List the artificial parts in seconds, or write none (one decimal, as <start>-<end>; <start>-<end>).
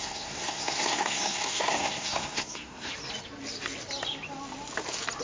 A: 0.0-2.9